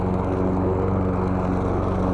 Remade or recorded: recorded